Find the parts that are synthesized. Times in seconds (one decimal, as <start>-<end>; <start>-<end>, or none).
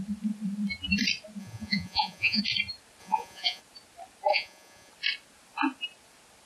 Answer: 1.4-2.4; 3.0-3.6; 4.3-4.9